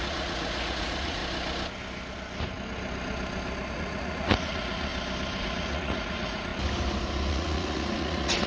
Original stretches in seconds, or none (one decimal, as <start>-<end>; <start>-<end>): 1.2-3.7; 4.9-5.4; 6.5-7.3